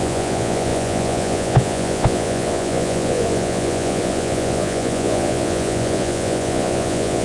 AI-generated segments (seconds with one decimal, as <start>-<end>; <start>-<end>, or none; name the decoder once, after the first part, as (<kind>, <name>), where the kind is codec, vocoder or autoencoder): 0.0-7.2 (vocoder, Vocos)